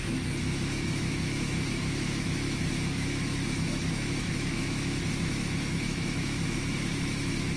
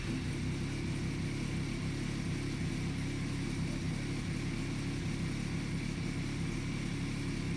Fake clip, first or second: first